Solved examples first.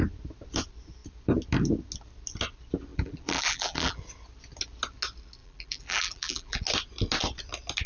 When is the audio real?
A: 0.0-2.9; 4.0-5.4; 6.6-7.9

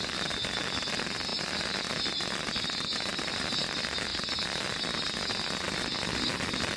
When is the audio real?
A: 0.4-0.9; 1.3-3.3; 4.1-6.8